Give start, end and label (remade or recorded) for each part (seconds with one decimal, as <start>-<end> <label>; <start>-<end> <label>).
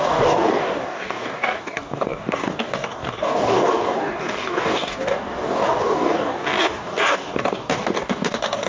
0.0-8.7 remade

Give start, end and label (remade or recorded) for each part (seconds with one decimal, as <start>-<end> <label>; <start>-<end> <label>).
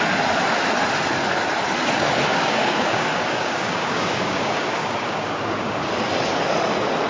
0.0-2.3 recorded; 2.3-5.9 remade; 5.9-7.1 recorded